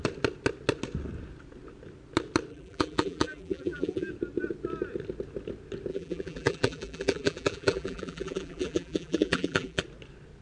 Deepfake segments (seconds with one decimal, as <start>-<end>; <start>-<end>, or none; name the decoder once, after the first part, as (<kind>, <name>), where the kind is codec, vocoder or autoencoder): 2.5-4.1 (vocoder, BigVGAN v2); 5.9-9.8